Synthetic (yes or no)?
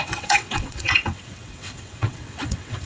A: yes